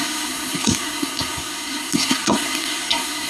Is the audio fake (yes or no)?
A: yes